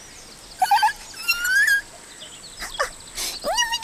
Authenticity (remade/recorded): recorded